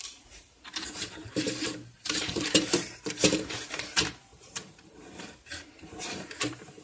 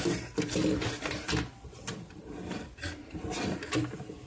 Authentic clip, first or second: second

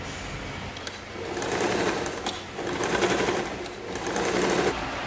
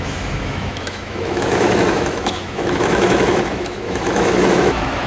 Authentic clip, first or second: first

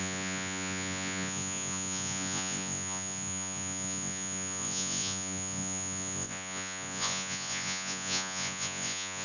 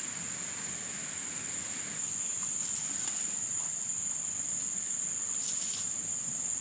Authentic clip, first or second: second